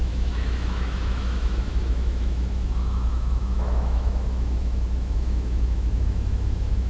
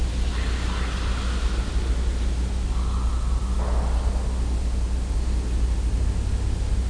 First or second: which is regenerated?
first